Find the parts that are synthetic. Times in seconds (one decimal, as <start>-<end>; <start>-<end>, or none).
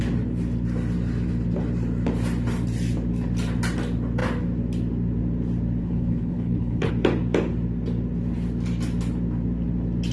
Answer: 5.8-6.9